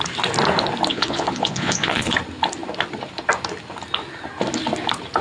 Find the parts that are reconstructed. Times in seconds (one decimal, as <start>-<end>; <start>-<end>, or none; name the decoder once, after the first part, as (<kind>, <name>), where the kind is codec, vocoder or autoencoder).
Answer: 0.9-2.1 (vocoder, Vocos)